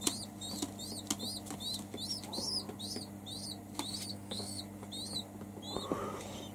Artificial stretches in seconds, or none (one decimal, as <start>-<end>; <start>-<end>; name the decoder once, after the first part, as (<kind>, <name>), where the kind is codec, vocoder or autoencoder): 4.1-4.6 (codec, SNAC)